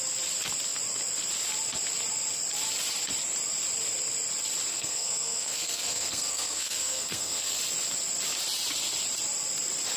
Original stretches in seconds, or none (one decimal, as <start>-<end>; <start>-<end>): 0.0-4.7; 7.6-10.0